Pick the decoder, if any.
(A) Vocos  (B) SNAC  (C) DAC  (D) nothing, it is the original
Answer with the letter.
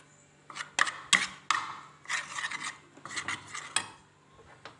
D